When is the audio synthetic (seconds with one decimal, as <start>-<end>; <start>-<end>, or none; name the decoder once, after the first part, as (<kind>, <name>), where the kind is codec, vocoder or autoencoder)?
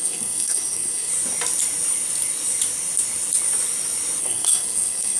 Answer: 0.0-1.1 (codec, SNAC); 4.2-5.2